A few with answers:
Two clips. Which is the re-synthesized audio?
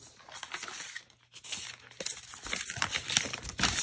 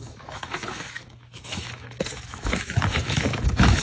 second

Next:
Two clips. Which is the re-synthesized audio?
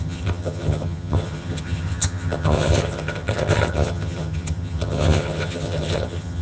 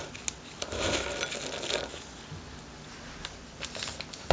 first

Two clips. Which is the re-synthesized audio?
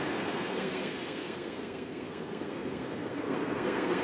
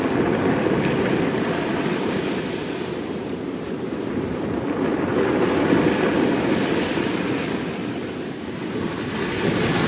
first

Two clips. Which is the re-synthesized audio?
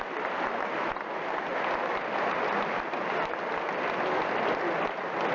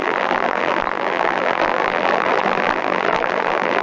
second